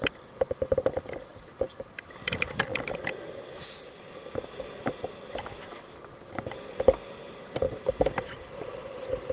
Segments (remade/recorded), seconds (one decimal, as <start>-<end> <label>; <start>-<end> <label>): 0.0-9.3 recorded